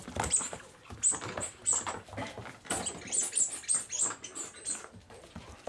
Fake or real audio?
real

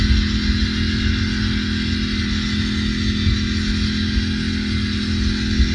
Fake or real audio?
real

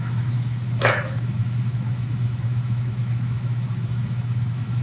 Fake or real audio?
fake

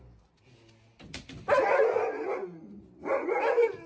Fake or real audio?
real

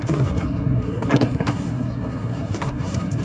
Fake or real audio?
fake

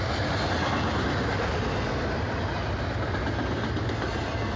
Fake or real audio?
real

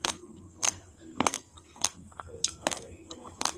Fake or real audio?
fake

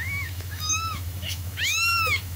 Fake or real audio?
fake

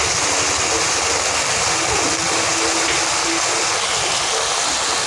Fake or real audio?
real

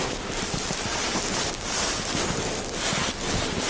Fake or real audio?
real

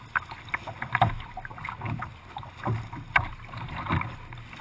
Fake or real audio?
real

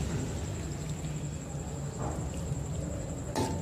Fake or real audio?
real